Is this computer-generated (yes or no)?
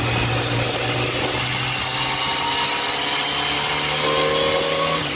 no